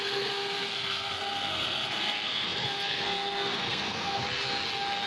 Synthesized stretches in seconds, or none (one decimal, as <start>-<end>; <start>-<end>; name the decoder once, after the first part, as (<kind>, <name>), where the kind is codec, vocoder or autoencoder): 0.0-4.2 (codec, SNAC)